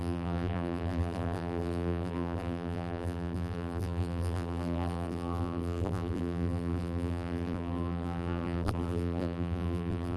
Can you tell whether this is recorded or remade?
remade